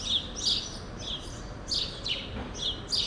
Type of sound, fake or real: real